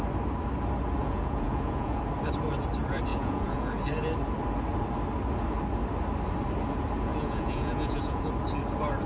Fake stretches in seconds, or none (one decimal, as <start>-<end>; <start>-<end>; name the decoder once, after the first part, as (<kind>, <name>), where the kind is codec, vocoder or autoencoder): 1.0-2.0 (vocoder, Vocos); 3.1-3.7; 7.1-8.3